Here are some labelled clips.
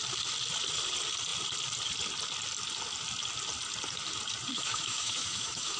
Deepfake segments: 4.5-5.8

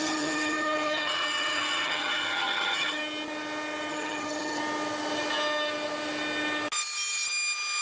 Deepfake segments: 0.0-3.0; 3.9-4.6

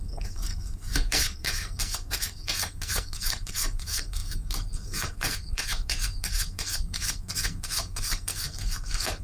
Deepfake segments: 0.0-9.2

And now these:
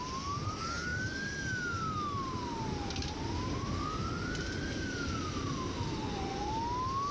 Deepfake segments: 6.0-6.5

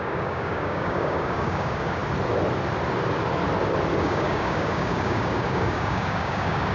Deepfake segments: 0.0-2.0; 4.0-6.7

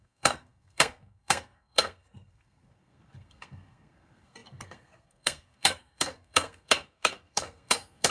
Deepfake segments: 0.0-8.1

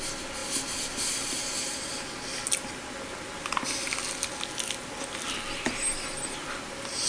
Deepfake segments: none